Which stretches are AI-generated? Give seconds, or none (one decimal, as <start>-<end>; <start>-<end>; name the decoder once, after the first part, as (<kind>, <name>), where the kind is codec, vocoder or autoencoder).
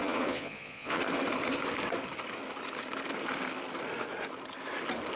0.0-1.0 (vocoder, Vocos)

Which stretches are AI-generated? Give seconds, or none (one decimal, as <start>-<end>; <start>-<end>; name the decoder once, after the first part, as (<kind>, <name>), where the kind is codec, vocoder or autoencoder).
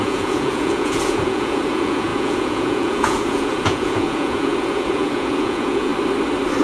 0.0-5.9 (vocoder, Vocos)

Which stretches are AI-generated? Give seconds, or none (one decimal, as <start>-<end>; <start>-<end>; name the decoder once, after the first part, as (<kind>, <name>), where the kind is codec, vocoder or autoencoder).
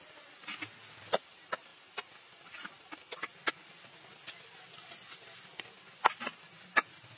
none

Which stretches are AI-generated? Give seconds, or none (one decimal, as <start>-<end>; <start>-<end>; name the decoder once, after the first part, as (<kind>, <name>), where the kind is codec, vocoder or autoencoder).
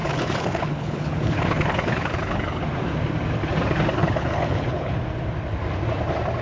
0.0-2.6 (codec, HILCodec); 4.0-4.9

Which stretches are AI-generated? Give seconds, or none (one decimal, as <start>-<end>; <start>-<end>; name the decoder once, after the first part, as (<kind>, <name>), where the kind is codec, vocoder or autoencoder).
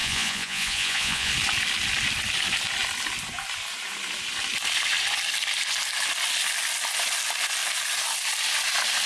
0.0-1.3 (vocoder, Vocos)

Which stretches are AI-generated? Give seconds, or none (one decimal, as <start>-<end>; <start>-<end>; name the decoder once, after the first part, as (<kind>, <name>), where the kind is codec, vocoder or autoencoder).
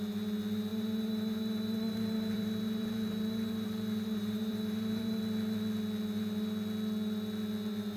0.7-5.2 (vocoder, BigVGAN v2)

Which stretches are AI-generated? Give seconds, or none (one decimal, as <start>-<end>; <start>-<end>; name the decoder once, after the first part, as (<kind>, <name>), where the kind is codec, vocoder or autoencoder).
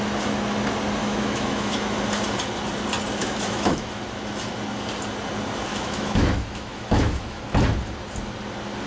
1.0-2.0 (autoencoder, DAC-VAE); 3.2-4.0; 5.7-7.4